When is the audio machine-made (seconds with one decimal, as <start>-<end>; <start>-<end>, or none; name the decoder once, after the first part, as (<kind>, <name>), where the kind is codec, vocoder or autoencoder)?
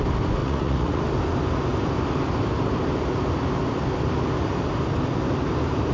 0.4-1.0 (vocoder, Vocos)